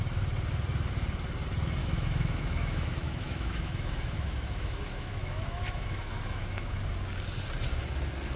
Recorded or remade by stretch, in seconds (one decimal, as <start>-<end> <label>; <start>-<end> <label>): 0.0-1.8 recorded; 1.8-6.8 remade; 6.8-8.4 recorded